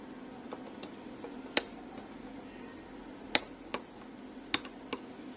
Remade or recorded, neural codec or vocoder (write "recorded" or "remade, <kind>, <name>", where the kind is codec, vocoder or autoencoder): recorded